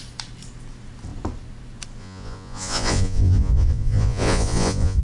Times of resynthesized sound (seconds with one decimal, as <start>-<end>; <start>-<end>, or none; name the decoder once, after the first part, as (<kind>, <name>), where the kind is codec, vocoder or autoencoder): 2.0-5.0 (vocoder, Vocos)